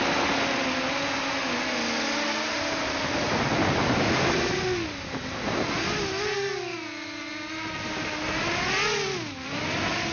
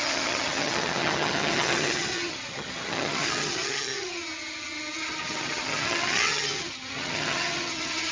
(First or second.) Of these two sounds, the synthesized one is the second